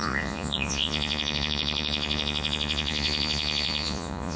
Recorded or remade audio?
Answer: remade